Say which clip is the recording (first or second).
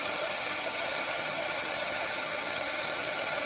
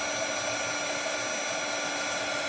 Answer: second